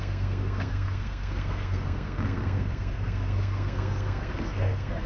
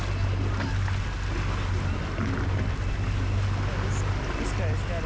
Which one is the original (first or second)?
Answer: second